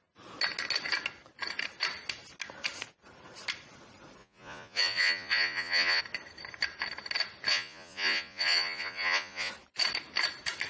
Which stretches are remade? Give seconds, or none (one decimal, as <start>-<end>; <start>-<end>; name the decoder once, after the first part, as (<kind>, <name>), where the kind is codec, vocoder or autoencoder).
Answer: 4.2-6.0 (vocoder, Vocos); 7.5-9.5